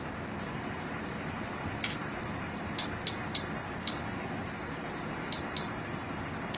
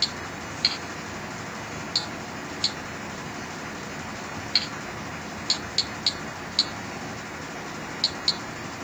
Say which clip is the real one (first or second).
second